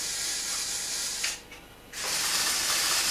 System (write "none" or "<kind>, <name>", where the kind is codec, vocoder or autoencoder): none